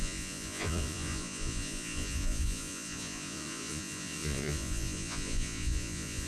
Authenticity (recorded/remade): remade